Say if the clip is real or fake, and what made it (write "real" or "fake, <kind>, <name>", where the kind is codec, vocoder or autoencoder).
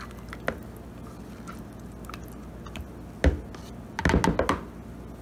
real